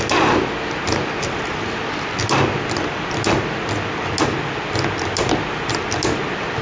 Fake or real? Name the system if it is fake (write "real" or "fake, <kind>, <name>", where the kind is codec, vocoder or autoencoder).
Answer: real